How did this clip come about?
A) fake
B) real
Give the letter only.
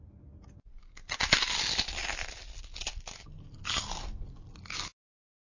B